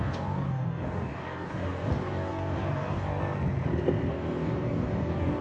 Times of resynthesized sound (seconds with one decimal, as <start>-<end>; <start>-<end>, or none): 0.0-3.2; 4.1-5.4